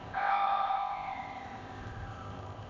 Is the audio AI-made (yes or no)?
yes